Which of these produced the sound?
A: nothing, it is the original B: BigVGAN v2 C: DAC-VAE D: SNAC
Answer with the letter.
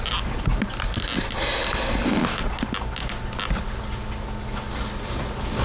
A